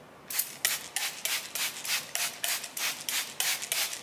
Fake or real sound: real